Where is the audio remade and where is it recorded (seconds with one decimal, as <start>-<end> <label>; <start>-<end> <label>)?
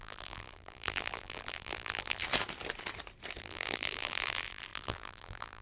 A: 0.0-2.2 remade; 2.2-3.4 recorded; 3.4-5.6 remade